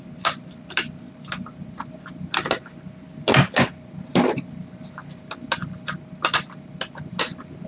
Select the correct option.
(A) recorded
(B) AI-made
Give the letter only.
A